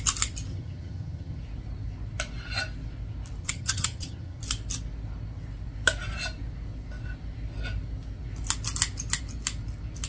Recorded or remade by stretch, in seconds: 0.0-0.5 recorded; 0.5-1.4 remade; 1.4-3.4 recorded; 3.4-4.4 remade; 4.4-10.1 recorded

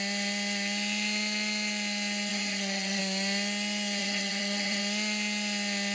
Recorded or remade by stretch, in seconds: 0.0-2.3 recorded; 2.3-3.0 remade; 3.0-4.0 recorded; 4.0-4.8 remade; 4.8-5.9 recorded

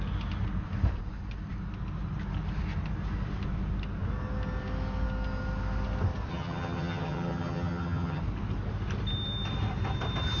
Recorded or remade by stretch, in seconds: 0.0-6.3 recorded; 6.3-8.2 remade; 8.2-10.4 recorded

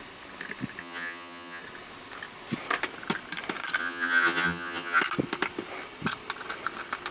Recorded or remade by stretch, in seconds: 0.0-0.8 recorded; 0.8-1.6 remade; 1.6-3.8 recorded; 3.8-5.0 remade; 5.0-7.1 recorded

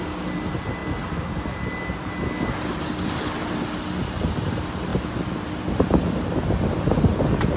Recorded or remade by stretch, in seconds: 0.0-7.6 recorded

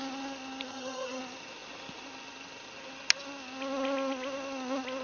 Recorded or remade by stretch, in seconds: 0.0-0.7 recorded; 0.7-1.2 remade; 1.2-5.0 recorded